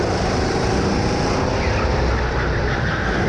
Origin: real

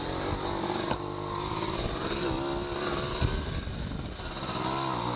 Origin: real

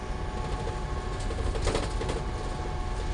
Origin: real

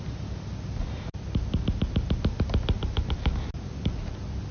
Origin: real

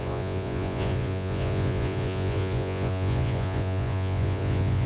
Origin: fake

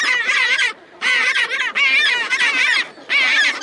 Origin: fake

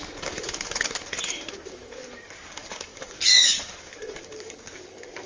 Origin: fake